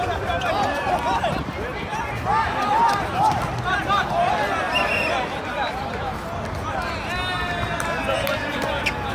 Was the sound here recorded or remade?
recorded